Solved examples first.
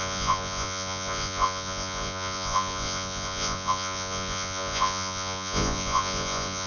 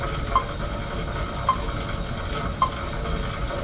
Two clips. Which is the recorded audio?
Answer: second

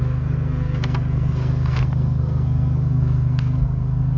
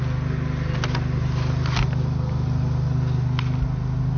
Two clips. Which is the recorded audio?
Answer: second